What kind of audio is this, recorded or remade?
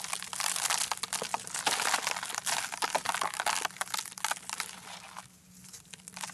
recorded